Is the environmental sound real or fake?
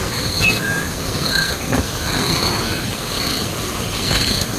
fake